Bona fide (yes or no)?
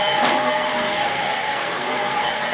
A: no